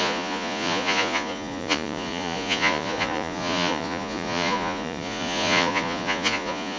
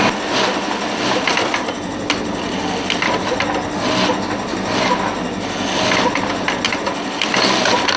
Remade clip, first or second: first